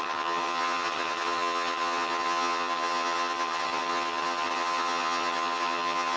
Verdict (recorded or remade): remade